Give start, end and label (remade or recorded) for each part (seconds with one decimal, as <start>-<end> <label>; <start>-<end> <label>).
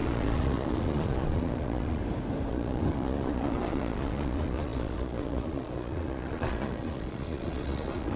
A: 0.0-2.0 remade; 2.0-2.5 recorded; 2.5-8.2 remade